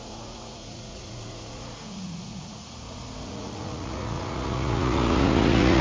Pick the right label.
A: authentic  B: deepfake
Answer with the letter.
B